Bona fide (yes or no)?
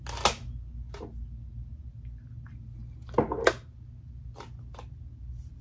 yes